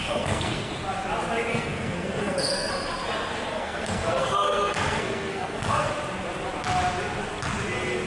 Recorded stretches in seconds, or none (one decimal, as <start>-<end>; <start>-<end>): 0.7-1.5; 2.7-3.5; 5.9-8.1